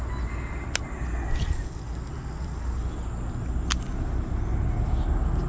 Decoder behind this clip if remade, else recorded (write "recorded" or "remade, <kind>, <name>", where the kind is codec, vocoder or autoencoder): recorded